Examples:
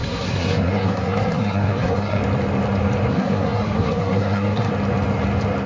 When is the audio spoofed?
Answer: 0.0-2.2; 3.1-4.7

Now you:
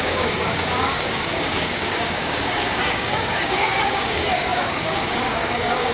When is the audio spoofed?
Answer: 0.0-5.9

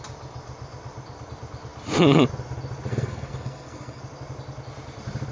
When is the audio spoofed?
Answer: 2.9-4.0

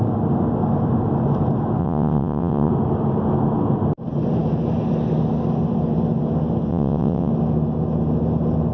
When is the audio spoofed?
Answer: 1.8-2.7; 6.7-7.3

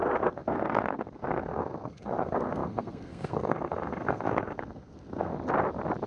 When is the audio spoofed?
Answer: 0.0-5.3

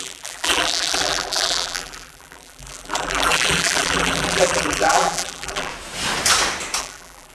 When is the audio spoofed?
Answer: 0.0-5.7; 6.8-7.3

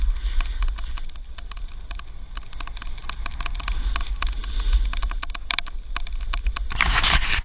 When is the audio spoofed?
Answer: none

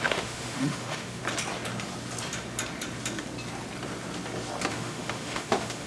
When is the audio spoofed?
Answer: 0.0-1.2; 4.7-5.9